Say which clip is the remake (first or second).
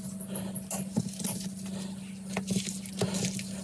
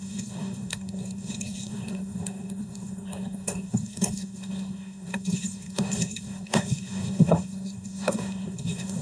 second